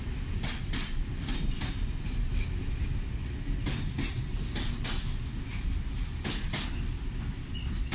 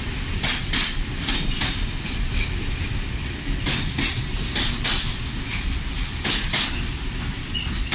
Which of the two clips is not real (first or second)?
second